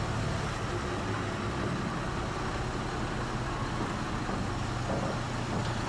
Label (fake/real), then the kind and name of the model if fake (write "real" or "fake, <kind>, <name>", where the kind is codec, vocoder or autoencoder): real